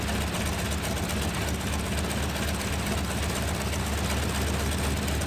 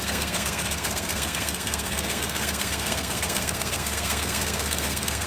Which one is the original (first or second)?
first